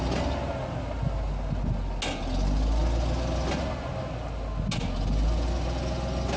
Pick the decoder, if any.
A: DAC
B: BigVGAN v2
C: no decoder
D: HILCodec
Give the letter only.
C